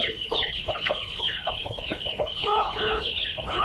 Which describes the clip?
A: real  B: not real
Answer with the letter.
B